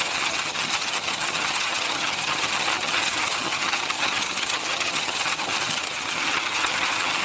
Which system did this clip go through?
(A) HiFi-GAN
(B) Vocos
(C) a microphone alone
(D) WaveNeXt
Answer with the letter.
A